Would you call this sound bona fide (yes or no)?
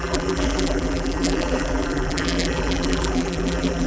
no